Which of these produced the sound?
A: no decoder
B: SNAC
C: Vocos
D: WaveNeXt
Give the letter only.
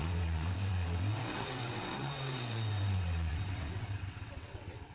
D